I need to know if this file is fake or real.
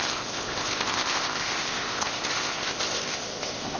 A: fake